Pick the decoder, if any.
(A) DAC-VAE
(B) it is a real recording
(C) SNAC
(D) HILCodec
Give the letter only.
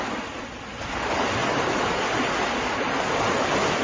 B